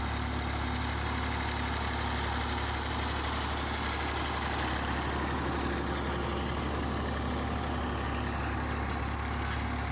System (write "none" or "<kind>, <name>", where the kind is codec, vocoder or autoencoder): none